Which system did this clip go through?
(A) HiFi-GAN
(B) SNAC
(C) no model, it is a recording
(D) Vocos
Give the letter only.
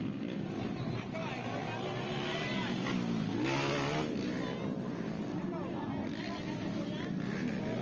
C